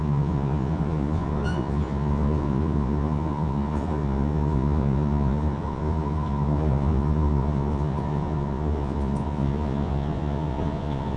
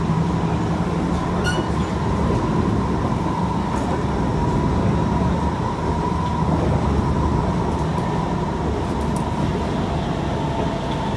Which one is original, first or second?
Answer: second